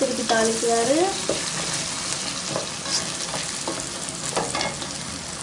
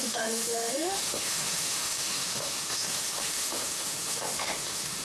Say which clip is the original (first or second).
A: first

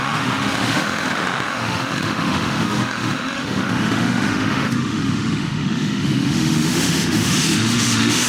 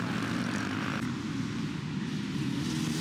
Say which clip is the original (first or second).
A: second